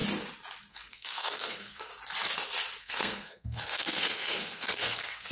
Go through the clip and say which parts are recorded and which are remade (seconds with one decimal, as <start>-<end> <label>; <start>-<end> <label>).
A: 0.0-0.7 recorded; 0.7-1.9 remade; 1.9-2.8 recorded; 2.8-5.3 remade